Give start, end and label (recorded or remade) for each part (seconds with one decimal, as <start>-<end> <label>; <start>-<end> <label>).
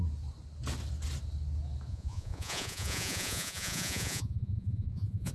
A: 0.0-1.9 recorded; 1.9-5.3 remade